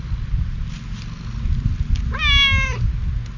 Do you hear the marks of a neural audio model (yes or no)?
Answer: no